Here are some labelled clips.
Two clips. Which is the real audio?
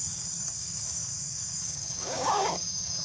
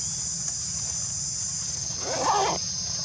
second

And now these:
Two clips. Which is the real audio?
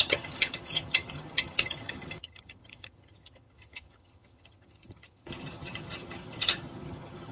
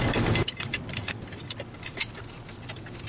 second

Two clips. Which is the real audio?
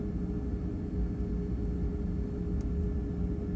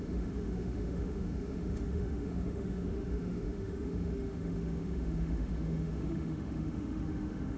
first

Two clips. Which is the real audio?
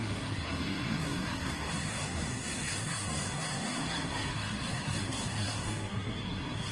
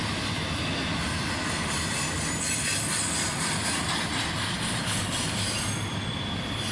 second